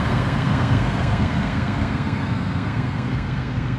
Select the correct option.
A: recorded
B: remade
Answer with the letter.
B